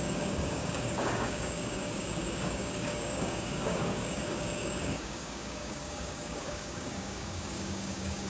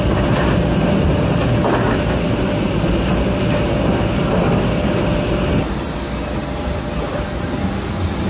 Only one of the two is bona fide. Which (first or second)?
second